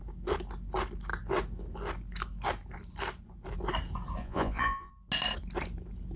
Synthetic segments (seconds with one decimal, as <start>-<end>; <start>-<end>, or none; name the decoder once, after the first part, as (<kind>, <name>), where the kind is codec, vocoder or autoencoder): 4.2-4.9 (vocoder, Vocos)

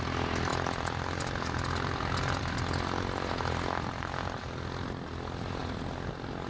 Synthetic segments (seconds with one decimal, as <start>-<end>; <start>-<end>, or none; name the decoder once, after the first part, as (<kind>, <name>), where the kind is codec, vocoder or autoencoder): none

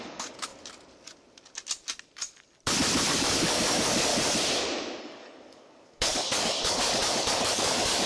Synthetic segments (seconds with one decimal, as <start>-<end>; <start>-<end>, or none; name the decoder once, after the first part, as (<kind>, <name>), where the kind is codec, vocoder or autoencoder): 0.0-0.5 (codec, DAC); 3.1-4.1; 5.0-8.1

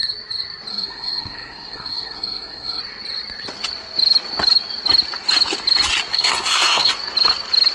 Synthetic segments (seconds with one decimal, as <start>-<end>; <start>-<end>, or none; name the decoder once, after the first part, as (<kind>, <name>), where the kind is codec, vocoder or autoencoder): 0.7-2.8 (codec, SNAC); 6.1-6.9

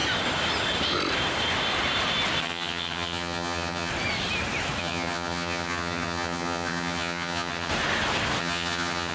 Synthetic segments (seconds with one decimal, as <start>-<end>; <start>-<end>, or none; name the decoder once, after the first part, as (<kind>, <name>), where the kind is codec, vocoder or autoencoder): 2.4-3.9 (vocoder, HiFi-GAN); 4.8-7.7; 8.4-9.1

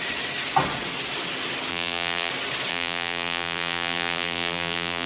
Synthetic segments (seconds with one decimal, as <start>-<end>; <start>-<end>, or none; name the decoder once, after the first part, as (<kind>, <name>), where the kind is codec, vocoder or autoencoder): 1.7-2.3 (vocoder, BigVGAN v2); 2.7-5.1

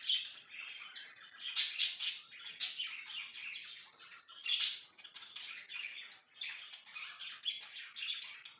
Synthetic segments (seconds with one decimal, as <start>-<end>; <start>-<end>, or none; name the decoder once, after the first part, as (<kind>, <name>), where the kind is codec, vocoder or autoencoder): none

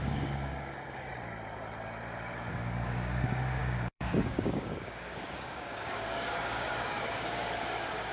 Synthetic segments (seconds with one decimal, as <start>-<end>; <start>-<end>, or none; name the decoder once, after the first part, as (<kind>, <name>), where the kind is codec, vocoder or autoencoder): 0.0-1.1 (codec, DAC); 2.5-8.1